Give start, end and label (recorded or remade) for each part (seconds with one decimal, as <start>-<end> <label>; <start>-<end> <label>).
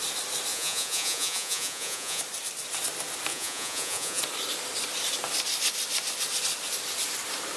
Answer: 0.0-0.5 recorded; 0.5-2.2 remade; 2.2-3.3 recorded; 3.3-4.2 remade; 4.2-7.6 recorded